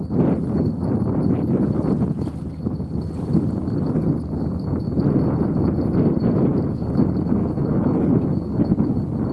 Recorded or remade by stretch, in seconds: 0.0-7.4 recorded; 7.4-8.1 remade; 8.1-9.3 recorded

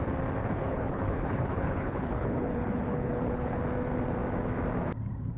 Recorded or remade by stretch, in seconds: 0.0-0.4 recorded; 0.4-3.6 remade; 3.6-5.4 recorded

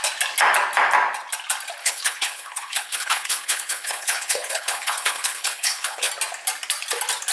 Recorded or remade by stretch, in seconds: 0.0-1.8 recorded; 1.8-6.1 remade; 6.1-7.3 recorded